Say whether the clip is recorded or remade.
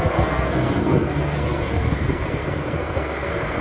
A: remade